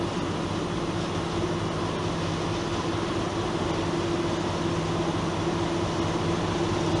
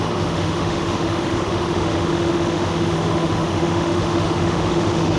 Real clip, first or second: first